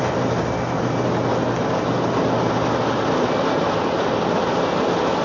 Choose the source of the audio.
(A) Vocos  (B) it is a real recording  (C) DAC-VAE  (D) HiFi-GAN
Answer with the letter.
B